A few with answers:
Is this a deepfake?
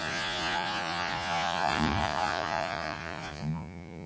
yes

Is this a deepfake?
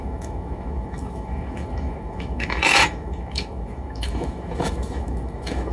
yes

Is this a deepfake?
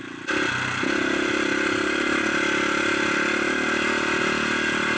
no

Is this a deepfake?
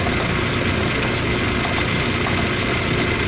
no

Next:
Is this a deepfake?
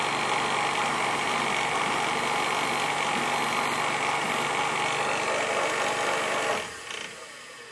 no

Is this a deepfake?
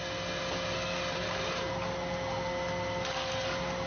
no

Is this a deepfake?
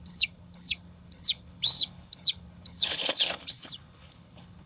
yes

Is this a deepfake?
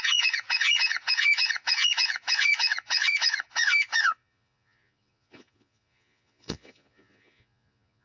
yes